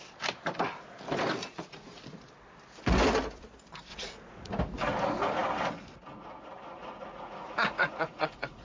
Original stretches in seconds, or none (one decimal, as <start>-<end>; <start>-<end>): 0.0-1.4; 2.0-3.9; 4.6-6.8